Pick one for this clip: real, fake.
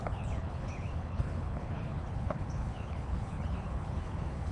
fake